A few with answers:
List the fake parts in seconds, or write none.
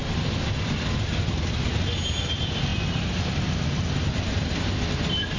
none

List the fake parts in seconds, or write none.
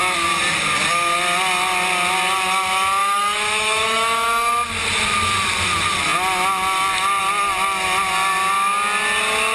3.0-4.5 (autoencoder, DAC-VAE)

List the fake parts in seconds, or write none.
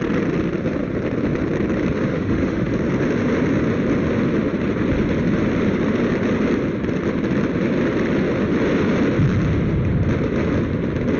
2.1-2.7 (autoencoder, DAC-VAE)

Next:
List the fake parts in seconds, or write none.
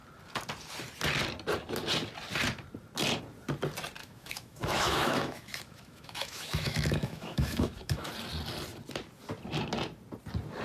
4.0-8.1 (autoencoder, DAC-VAE)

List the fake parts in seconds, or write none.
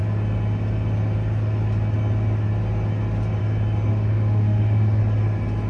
3.9-5.0 (autoencoder, DAC-VAE)